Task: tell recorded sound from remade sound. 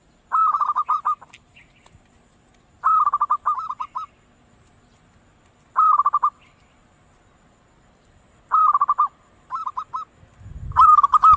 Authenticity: recorded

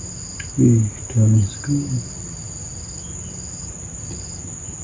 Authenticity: recorded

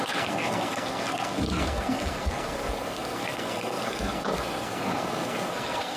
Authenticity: remade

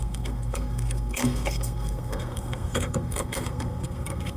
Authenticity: remade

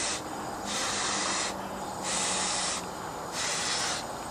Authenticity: recorded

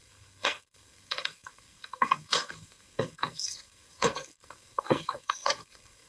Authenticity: remade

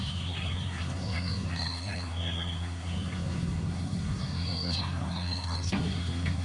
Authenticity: remade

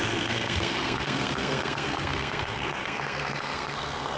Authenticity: remade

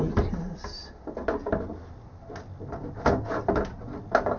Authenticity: recorded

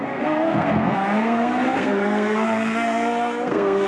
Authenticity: remade